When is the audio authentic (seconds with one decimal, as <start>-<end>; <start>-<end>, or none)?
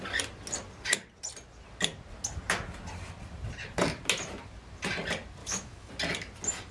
0.0-5.4; 5.9-6.7